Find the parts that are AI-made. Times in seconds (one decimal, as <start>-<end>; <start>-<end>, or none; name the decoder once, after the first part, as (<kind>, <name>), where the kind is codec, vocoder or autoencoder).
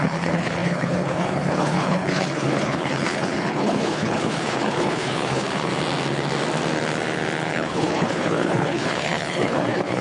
0.0-5.7 (codec, HILCodec); 7.5-10.0